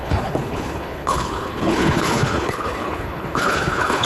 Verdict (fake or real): fake